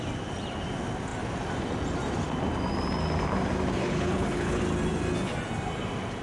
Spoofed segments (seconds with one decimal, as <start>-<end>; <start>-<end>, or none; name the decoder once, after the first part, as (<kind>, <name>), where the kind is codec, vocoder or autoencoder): 3.8-4.6 (codec, HILCodec)